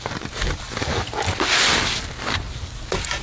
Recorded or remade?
recorded